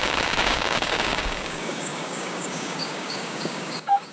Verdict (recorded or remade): remade